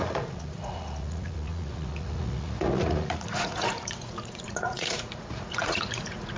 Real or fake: fake